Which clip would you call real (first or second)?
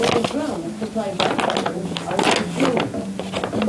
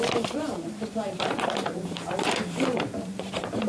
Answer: first